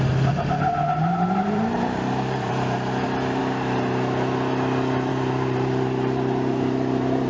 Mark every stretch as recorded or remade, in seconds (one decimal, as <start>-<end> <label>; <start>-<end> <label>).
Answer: 0.0-3.4 remade; 3.4-5.1 recorded; 5.1-7.3 remade